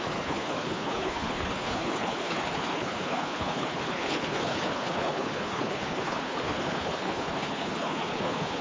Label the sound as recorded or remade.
remade